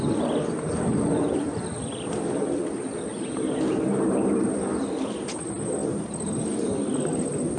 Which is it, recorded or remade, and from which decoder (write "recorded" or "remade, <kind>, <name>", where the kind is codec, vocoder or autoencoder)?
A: recorded